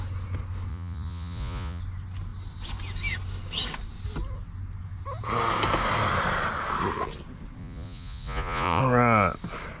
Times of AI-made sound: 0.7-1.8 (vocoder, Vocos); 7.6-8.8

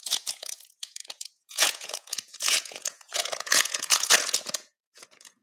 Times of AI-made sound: 0.0-5.4 (vocoder, Vocos)